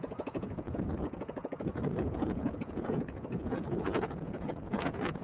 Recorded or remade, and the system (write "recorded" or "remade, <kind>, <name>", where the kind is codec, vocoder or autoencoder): remade, vocoder, Vocos